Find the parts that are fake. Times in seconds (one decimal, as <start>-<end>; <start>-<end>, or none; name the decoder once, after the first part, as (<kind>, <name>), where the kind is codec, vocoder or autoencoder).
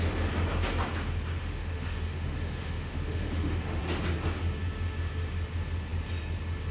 1.4-3.8 (autoencoder, DAC-VAE)